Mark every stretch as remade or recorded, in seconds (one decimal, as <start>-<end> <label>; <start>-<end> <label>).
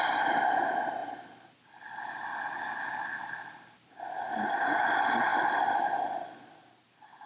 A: 0.0-7.3 recorded